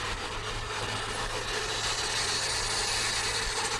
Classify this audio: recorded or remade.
recorded